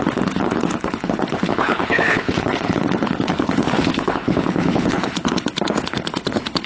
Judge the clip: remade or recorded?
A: remade